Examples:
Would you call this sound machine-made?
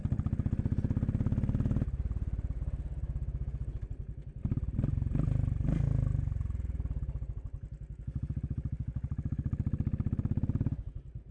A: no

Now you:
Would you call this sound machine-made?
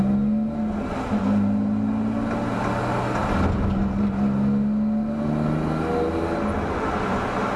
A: no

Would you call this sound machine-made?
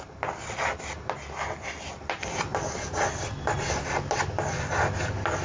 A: no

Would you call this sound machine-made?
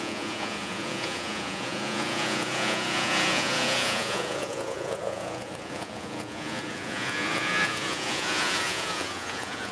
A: yes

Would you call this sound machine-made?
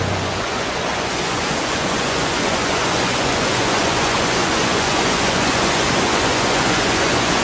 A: yes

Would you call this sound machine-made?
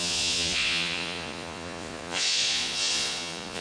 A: yes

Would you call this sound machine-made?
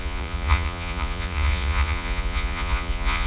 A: yes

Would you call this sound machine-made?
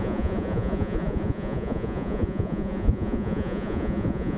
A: yes